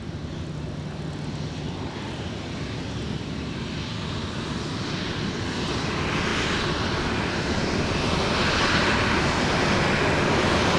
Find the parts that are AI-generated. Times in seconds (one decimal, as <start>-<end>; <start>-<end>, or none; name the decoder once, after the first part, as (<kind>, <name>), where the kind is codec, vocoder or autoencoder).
none